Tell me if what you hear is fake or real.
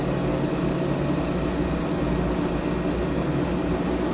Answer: real